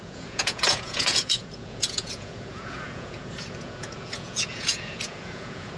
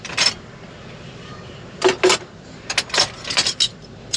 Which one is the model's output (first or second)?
first